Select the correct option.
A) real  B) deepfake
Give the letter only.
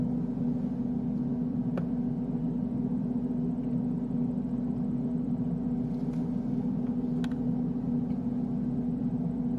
A